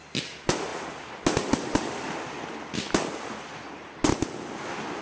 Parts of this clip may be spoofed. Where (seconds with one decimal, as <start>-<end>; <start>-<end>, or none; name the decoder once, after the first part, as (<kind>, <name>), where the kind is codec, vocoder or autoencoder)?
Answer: none